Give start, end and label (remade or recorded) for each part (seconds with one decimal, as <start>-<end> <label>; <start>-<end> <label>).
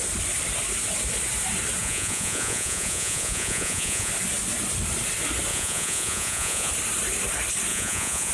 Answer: 0.0-1.8 recorded; 1.8-4.1 remade; 4.1-5.5 recorded; 5.5-6.7 remade; 6.7-7.7 recorded; 7.7-8.3 remade